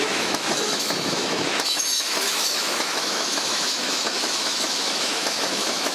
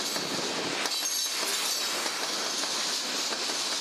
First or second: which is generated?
first